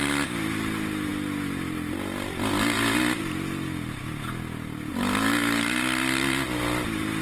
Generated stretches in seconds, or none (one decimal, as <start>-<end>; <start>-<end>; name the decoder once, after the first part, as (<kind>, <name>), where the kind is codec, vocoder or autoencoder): none